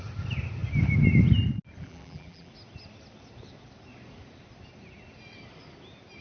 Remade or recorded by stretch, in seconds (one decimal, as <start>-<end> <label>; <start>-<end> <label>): 0.0-1.8 recorded; 1.8-2.5 remade; 2.5-6.2 recorded